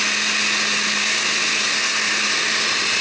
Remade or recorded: recorded